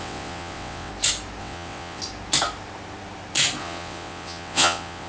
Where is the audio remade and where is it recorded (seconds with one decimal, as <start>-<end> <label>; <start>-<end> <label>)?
0.0-0.9 remade; 0.9-1.4 recorded; 1.4-2.0 remade; 2.0-3.6 recorded; 3.6-5.1 remade